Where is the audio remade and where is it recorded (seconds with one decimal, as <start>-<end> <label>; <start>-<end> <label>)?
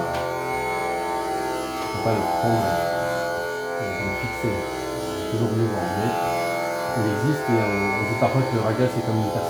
0.0-9.5 recorded